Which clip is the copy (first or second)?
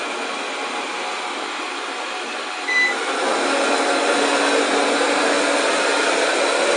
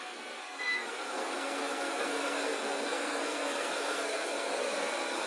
second